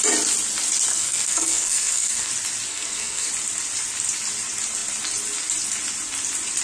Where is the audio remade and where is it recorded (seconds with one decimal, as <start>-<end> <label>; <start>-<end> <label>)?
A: 0.0-0.9 recorded; 0.9-2.3 remade; 2.3-2.7 recorded; 2.7-3.3 remade; 3.3-6.6 recorded